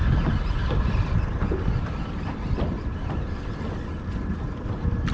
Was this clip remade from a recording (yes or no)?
no